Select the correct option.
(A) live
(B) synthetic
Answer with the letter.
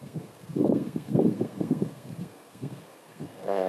B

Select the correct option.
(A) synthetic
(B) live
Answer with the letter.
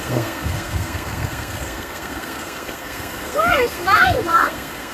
A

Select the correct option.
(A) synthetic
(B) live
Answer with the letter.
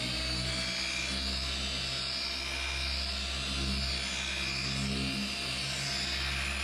B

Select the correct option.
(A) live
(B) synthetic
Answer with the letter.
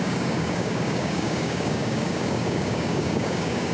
B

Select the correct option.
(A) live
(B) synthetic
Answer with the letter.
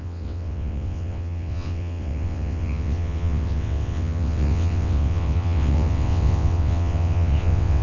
B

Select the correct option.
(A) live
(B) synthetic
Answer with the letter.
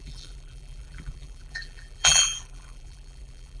B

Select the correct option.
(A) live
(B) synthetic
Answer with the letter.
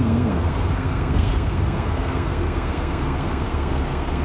B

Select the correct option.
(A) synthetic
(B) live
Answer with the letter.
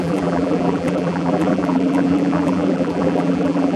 A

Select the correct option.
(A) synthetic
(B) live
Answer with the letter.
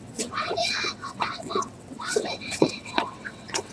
A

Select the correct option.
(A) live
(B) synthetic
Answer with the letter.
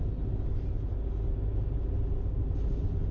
A